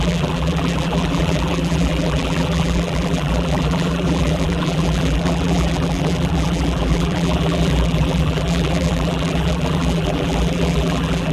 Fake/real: fake